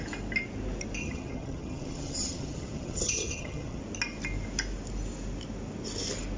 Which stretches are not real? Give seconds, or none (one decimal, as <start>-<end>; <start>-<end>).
1.0-3.8